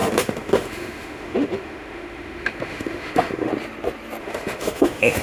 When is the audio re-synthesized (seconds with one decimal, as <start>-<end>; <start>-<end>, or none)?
0.0-3.5; 4.2-5.2